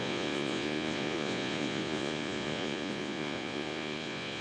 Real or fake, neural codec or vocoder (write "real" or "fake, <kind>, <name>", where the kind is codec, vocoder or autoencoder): fake, vocoder, Vocos